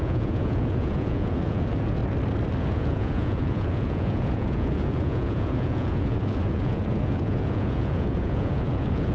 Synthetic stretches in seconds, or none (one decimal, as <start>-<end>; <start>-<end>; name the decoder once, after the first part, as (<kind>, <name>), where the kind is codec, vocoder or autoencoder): 0.0-2.0 (vocoder, Vocos); 2.6-9.1